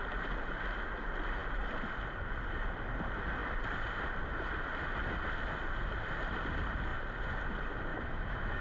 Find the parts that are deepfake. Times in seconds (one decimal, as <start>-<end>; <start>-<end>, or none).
7.9-8.6